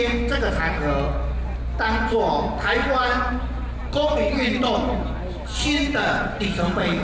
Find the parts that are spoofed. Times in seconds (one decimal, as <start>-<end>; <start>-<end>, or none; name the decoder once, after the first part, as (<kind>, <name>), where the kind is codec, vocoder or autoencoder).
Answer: none